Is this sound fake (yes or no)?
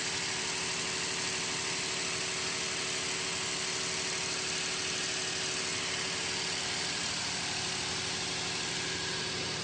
no